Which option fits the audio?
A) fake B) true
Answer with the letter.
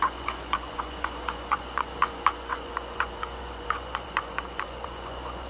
A